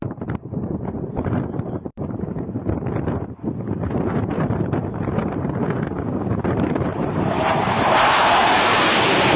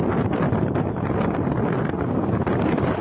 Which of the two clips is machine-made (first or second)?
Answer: first